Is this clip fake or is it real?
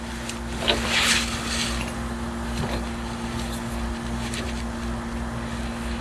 real